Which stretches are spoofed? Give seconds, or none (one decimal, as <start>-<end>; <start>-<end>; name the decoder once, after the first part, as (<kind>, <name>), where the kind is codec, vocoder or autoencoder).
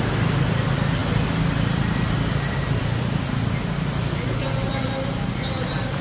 none